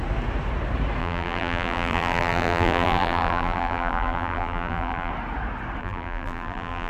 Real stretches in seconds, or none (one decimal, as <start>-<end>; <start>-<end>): 0.0-1.0; 5.1-5.8